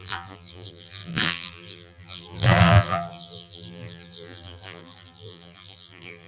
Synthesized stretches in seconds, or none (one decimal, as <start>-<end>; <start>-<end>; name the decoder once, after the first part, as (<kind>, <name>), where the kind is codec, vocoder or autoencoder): 0.0-6.3 (vocoder, BigVGAN v2)